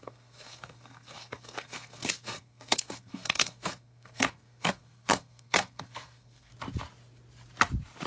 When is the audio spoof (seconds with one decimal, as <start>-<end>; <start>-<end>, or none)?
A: 0.0-6.5